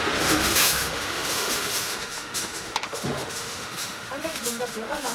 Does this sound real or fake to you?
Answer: fake